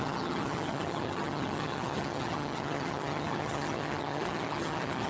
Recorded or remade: remade